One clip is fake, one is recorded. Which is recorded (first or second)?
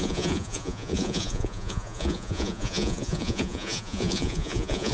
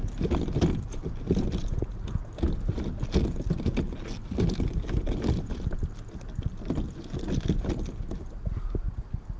second